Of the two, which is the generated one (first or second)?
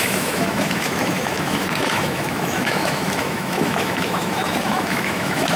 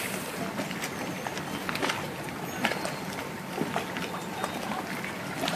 first